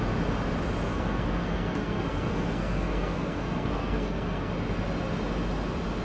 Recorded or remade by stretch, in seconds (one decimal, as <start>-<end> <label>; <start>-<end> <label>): 0.0-0.9 recorded; 0.9-4.5 remade; 4.5-6.0 recorded